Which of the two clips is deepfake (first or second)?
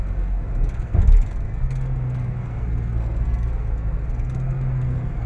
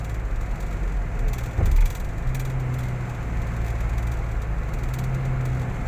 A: first